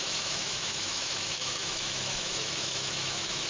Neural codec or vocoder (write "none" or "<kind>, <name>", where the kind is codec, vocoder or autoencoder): autoencoder, DAC-VAE